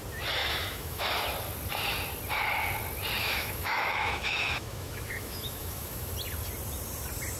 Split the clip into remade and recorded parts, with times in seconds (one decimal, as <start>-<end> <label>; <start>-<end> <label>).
0.0-0.4 recorded; 0.4-1.1 remade; 1.1-3.2 recorded; 3.2-6.1 remade; 6.1-7.4 recorded